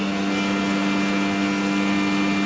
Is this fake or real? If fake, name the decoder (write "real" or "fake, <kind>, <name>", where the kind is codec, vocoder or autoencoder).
real